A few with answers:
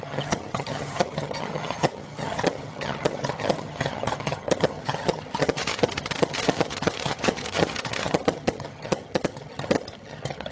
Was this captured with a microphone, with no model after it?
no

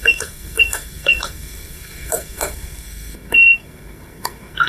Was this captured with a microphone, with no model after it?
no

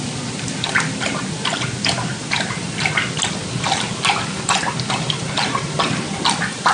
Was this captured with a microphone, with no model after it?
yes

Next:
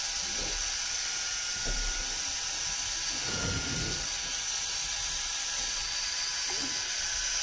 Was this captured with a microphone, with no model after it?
yes